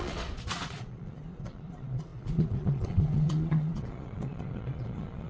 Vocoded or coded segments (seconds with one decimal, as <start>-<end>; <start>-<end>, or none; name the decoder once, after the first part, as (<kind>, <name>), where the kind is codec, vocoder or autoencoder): 0.0-5.3 (vocoder, Vocos)